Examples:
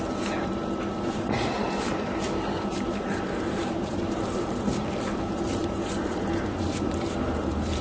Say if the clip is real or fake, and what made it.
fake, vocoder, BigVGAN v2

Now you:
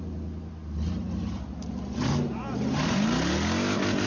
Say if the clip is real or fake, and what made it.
real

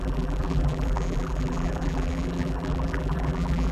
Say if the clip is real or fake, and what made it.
fake, vocoder, BigVGAN v2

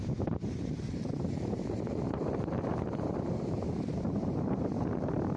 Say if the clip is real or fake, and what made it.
fake, vocoder, BigVGAN v2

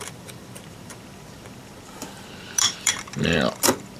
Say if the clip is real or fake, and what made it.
fake, vocoder, BigVGAN v2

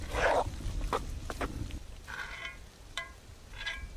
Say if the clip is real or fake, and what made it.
fake, vocoder, BigVGAN v2